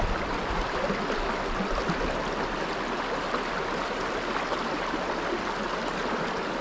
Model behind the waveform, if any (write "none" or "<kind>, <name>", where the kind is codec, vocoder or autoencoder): none